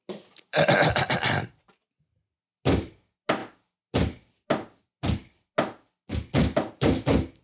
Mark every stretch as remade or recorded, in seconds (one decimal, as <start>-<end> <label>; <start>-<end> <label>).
0.0-7.4 recorded